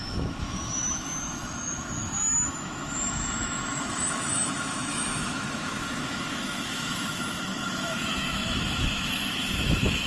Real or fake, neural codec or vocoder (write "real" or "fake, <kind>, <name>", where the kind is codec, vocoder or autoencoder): fake, autoencoder, DAC-VAE